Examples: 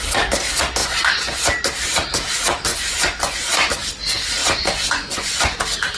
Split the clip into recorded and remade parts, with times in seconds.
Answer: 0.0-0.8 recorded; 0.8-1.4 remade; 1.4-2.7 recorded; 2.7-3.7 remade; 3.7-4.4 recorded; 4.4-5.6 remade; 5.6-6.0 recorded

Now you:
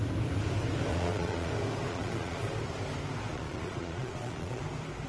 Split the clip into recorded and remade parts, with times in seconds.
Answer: 0.0-0.9 recorded; 0.9-1.5 remade; 1.5-1.9 recorded; 1.9-2.5 remade; 2.5-3.3 recorded; 3.3-4.6 remade; 4.6-5.1 recorded

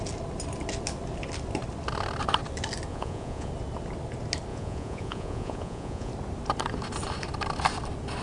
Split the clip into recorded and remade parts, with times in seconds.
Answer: 0.0-2.9 recorded; 2.9-3.5 remade; 3.5-4.5 recorded; 4.5-6.1 remade; 6.1-8.2 recorded